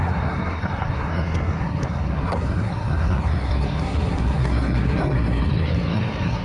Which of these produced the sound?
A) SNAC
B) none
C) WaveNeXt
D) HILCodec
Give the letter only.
A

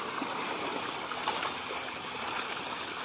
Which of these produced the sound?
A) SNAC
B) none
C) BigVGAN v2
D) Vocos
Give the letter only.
B